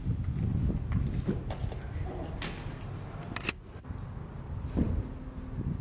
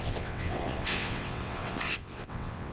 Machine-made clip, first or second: second